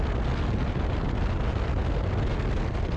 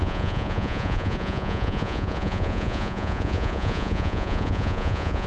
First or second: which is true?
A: first